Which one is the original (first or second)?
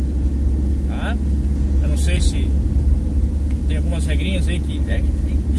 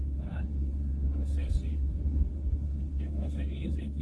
first